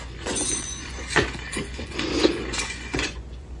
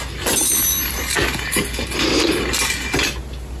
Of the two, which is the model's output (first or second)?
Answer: first